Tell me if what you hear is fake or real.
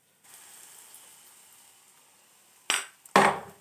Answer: real